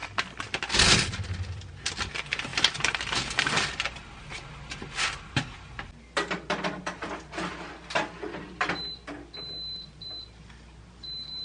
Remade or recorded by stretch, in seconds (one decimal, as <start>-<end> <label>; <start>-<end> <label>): 0.0-11.4 recorded